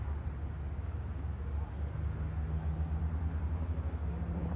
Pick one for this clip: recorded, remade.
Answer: recorded